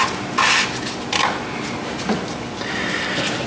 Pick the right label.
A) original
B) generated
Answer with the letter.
A